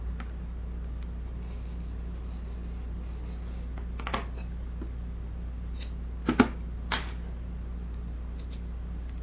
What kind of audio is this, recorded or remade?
recorded